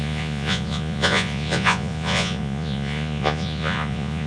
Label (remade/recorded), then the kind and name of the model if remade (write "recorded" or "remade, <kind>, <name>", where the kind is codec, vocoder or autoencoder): remade, vocoder, Vocos